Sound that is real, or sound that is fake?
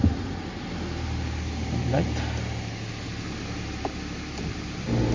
real